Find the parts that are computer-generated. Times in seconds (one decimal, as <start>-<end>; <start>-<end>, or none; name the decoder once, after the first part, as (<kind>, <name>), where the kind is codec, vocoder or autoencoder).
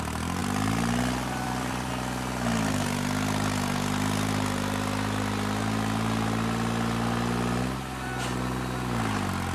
0.4-1.9 (vocoder, BigVGAN v2)